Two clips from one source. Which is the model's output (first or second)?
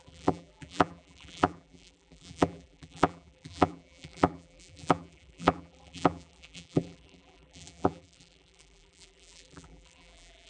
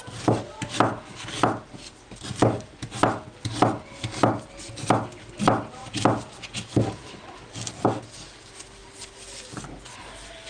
first